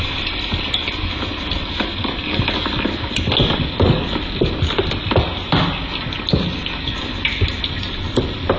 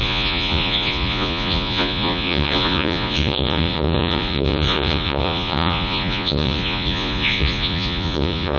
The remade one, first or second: second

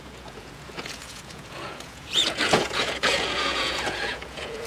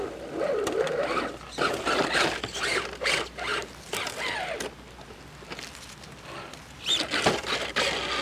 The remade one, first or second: first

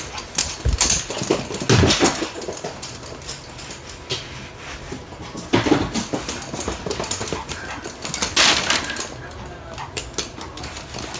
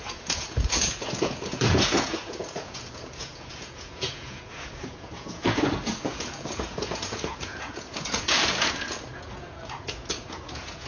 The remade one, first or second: second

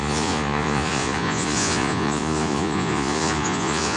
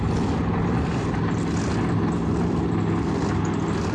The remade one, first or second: first